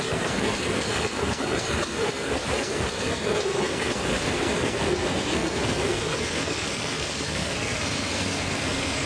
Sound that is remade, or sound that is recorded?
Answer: remade